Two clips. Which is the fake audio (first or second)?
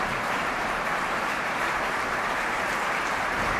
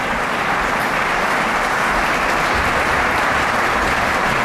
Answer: first